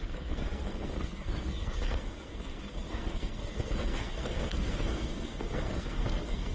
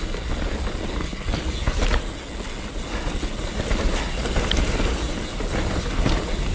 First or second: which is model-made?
first